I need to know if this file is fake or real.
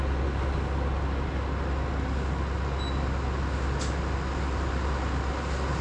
real